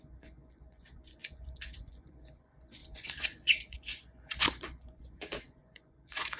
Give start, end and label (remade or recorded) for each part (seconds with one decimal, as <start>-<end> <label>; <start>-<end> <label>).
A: 0.0-6.4 remade